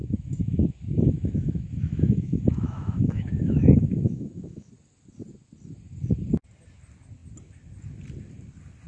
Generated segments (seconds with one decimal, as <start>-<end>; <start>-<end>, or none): 0.0-4.7